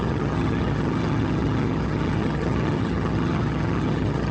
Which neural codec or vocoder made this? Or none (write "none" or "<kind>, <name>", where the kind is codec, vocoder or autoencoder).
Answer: vocoder, HiFi-GAN